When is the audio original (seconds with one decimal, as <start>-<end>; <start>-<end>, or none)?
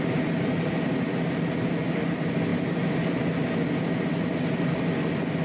0.0-5.4